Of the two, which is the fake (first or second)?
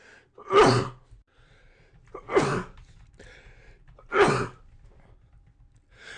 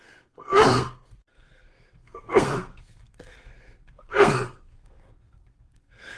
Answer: second